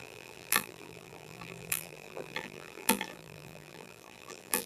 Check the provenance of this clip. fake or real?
fake